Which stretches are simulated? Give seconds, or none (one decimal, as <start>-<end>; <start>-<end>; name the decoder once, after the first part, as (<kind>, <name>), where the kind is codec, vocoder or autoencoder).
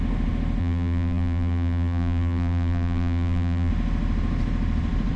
0.6-3.7 (vocoder, BigVGAN v2)